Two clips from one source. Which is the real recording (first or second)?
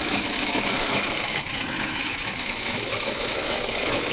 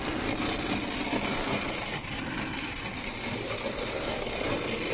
second